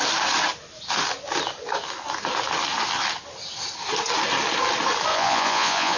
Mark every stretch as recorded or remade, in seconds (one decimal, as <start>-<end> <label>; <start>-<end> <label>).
0.0-5.1 recorded; 5.1-6.0 remade